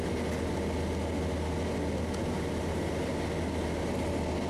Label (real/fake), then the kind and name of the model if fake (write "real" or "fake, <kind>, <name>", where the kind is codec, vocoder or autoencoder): real